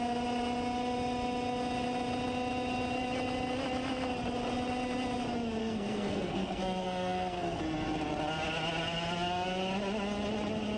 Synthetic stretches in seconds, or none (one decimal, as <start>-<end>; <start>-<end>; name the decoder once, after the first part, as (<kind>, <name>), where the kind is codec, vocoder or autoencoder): 5.6-7.6 (codec, SNAC)

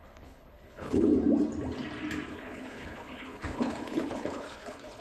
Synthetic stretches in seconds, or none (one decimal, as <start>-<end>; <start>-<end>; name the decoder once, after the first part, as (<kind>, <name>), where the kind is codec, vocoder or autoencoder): 0.0-1.1 (codec, HILCodec); 2.3-5.0

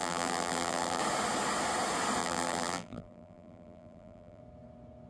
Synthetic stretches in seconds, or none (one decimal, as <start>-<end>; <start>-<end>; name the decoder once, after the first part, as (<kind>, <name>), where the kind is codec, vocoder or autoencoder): 0.0-1.0 (vocoder, BigVGAN v2); 2.2-4.4